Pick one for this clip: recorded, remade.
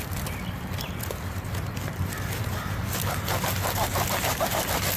recorded